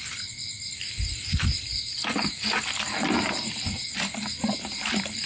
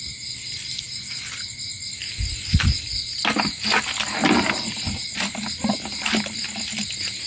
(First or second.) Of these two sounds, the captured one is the second